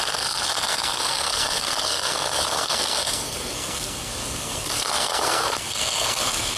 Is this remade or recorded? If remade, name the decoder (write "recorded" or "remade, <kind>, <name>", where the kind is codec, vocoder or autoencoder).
remade, codec, SNAC